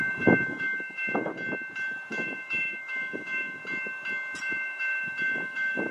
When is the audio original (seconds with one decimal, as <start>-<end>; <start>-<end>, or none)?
1.3-2.1; 3.6-4.4

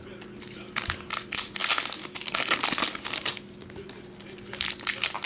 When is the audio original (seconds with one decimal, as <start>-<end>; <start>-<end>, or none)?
0.0-5.3

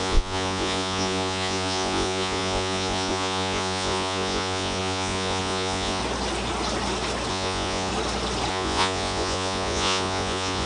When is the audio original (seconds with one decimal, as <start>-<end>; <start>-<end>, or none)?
6.0-7.3; 7.9-8.5